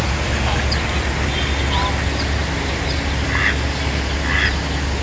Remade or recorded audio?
recorded